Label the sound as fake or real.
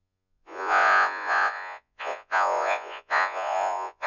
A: fake